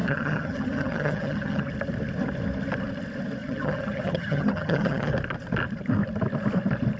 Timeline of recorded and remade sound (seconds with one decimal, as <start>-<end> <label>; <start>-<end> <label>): 0.0-1.7 remade; 1.7-3.4 recorded; 3.4-5.1 remade; 5.1-7.0 recorded